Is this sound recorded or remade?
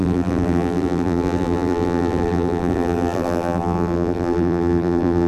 remade